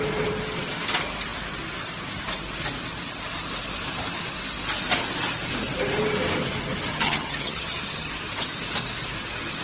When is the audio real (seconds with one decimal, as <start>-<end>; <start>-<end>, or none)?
0.0-6.9; 8.1-9.6